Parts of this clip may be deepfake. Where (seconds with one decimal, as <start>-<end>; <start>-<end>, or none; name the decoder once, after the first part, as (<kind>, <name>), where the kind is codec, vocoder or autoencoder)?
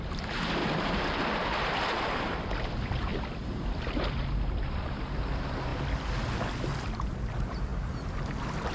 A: 0.0-7.7 (vocoder, BigVGAN v2)